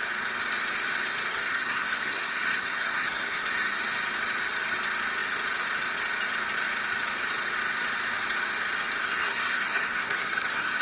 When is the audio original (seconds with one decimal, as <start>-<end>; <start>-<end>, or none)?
0.0-1.3; 3.8-9.0